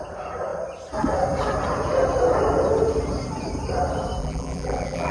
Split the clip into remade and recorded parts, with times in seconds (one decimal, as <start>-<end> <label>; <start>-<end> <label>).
0.0-4.2 recorded; 4.2-5.1 remade

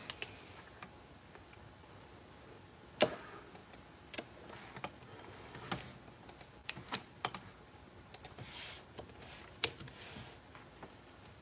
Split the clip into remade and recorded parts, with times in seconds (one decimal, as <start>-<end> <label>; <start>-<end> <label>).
0.0-6.6 recorded; 6.6-9.6 remade; 9.6-11.4 recorded

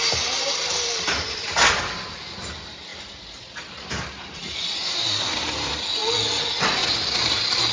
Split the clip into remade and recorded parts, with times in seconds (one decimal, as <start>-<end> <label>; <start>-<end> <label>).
0.0-2.9 remade; 2.9-3.9 recorded; 3.9-6.0 remade; 6.0-7.2 recorded; 7.2-7.7 remade

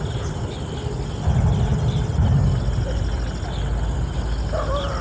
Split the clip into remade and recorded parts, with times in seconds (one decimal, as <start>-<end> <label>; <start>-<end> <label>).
0.0-5.0 recorded

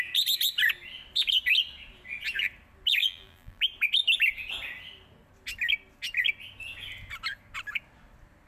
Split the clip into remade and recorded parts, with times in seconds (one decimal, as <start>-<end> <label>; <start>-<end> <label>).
0.0-3.0 recorded; 3.0-3.6 remade; 3.6-8.5 recorded

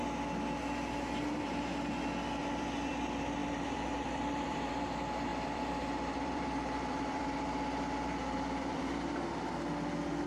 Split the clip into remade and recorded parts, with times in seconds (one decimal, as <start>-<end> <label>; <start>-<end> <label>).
0.0-2.4 recorded; 2.4-3.0 remade; 3.0-3.4 recorded; 3.4-4.7 remade; 4.7-5.3 recorded; 5.3-8.8 remade; 8.8-10.3 recorded

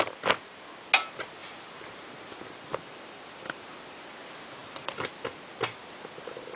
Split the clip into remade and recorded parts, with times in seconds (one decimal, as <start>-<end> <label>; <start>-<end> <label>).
0.0-1.4 recorded; 1.4-4.0 remade; 4.0-4.6 recorded; 4.6-5.8 remade; 5.8-6.6 recorded